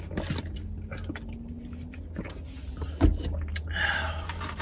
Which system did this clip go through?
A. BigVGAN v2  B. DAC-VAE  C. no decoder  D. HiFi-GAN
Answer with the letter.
C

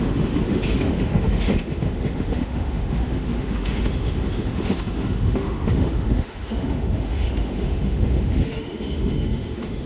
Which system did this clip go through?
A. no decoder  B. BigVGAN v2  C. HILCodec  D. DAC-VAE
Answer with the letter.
D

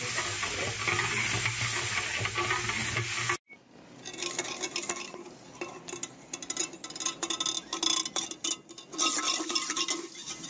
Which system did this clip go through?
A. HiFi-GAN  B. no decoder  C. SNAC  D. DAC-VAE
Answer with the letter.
B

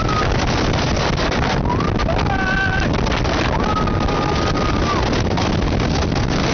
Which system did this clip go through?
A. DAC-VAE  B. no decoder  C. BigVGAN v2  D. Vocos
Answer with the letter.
B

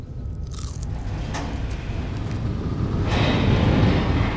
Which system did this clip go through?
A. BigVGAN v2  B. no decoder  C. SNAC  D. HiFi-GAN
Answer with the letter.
B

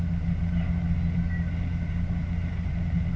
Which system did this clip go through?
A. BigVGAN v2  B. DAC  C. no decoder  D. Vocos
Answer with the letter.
C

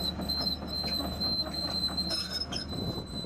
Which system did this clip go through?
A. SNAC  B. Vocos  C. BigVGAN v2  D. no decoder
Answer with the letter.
D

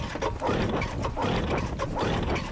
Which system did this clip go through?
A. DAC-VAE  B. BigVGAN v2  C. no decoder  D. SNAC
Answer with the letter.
C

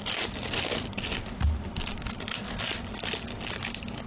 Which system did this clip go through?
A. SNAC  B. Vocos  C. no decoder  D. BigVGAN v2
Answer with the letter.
C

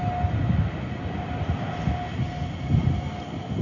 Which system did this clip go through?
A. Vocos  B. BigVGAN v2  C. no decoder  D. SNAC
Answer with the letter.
C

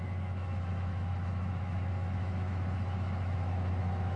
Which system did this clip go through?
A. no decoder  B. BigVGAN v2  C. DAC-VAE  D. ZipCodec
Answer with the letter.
C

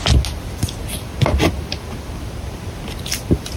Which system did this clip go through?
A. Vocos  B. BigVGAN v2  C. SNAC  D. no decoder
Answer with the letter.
D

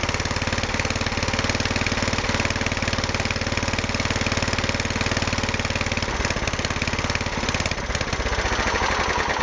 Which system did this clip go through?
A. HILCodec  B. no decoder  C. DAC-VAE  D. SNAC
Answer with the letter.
B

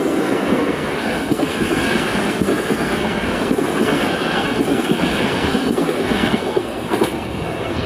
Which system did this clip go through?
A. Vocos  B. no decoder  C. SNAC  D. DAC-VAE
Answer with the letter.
C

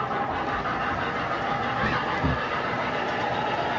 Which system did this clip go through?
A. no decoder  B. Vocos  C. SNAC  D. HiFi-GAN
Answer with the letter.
A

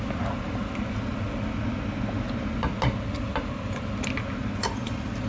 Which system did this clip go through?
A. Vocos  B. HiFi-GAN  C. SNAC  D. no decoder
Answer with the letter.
D